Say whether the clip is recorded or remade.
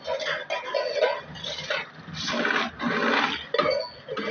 recorded